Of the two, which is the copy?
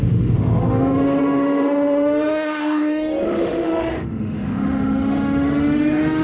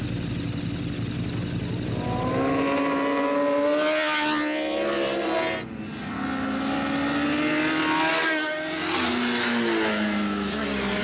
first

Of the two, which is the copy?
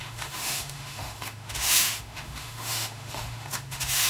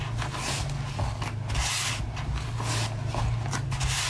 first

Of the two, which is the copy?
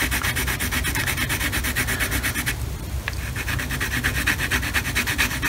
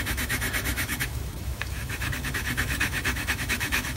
second